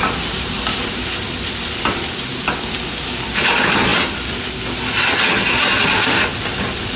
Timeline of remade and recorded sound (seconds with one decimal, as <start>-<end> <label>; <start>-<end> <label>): 0.0-7.0 recorded